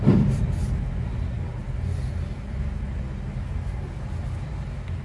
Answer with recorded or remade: recorded